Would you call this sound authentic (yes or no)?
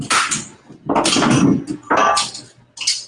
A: yes